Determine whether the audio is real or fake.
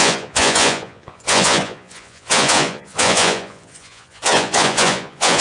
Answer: fake